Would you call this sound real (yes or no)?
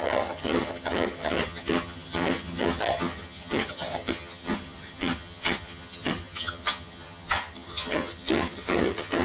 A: no